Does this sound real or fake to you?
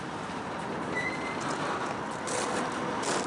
real